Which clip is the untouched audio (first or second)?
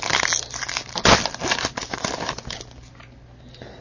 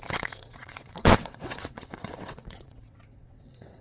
first